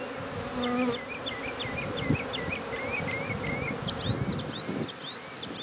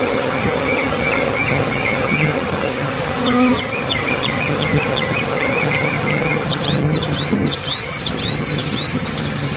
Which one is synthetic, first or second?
second